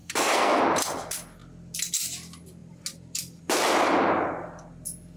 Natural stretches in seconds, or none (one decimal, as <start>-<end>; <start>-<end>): 0.6-5.2